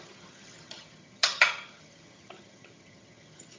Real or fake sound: fake